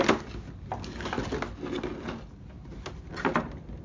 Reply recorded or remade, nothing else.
recorded